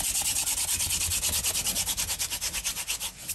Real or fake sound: real